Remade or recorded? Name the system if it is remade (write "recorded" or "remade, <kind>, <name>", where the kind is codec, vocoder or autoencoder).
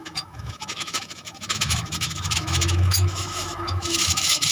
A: remade, autoencoder, DAC-VAE